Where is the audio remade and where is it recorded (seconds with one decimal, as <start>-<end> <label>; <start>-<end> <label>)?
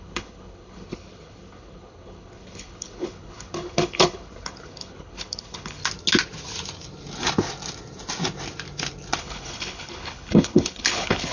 0.0-5.8 remade; 5.8-9.2 recorded; 9.2-11.3 remade